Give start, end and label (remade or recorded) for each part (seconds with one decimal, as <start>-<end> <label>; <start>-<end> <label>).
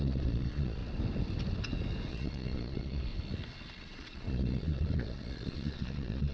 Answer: 0.0-0.8 remade; 0.8-2.1 recorded; 2.1-3.1 remade; 3.1-3.8 recorded; 3.8-6.3 remade